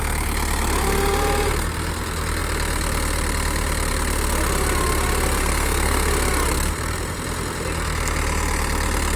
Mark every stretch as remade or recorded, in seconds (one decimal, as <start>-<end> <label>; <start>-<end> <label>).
0.0-5.4 recorded; 5.4-6.1 remade; 6.1-9.2 recorded